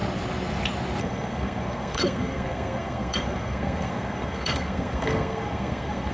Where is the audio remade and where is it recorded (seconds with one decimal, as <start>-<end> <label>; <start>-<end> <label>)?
0.0-1.0 recorded; 1.0-6.1 remade